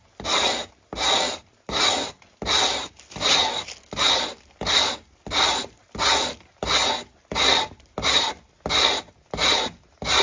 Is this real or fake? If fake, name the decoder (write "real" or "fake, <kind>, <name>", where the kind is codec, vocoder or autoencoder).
real